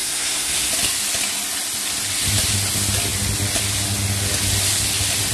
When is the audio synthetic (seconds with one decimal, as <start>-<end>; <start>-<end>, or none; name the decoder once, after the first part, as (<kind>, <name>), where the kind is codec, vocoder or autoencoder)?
0.0-0.7 (codec, SNAC)